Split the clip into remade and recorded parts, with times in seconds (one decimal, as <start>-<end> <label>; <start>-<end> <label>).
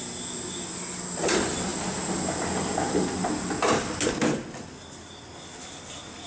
0.0-6.3 recorded